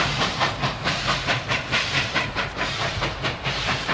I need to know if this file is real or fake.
fake